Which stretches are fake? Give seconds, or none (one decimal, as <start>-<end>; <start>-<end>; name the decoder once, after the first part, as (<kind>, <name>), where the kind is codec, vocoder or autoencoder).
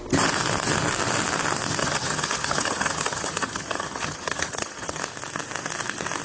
1.8-5.0 (vocoder, HiFi-GAN)